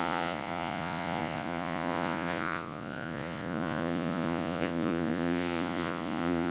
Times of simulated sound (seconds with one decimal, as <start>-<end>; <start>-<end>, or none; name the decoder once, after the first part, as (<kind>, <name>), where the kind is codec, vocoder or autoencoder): 0.0-6.5 (vocoder, Vocos)